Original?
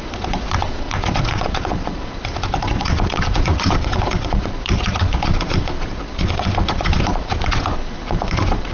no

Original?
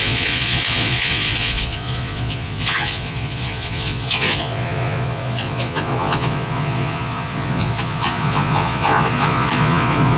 no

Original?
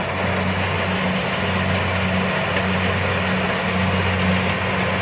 yes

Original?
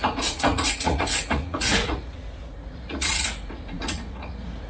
no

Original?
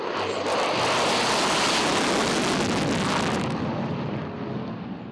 yes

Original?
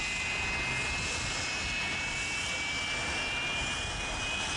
yes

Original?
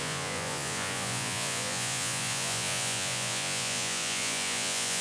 no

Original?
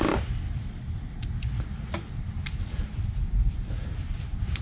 yes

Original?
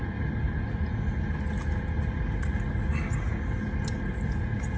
yes